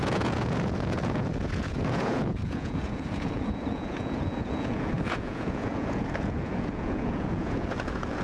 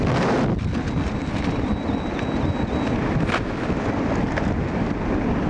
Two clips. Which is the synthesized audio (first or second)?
first